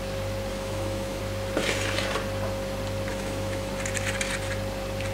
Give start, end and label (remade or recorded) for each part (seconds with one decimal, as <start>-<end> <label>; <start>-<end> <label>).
0.0-0.5 recorded; 0.5-1.2 remade; 1.2-3.1 recorded; 3.1-3.7 remade; 3.7-5.1 recorded